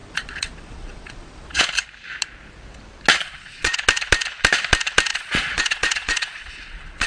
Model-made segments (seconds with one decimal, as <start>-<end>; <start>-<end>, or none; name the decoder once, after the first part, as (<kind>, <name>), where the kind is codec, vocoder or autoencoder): 0.0-1.6 (vocoder, Vocos); 3.2-3.8; 5.1-7.1